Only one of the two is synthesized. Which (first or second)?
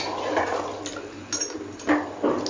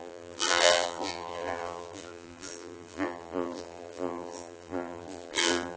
second